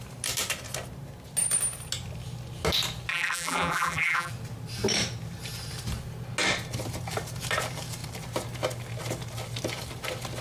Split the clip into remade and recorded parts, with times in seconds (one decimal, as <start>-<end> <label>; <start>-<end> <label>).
0.0-3.1 recorded; 3.1-4.3 remade; 4.3-10.4 recorded